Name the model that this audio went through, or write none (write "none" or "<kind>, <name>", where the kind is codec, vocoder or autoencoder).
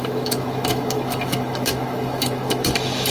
autoencoder, DAC-VAE